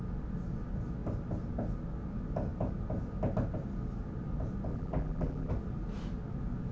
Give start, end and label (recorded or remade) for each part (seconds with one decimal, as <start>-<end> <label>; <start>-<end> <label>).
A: 0.0-4.7 recorded; 4.7-5.5 remade; 5.5-6.7 recorded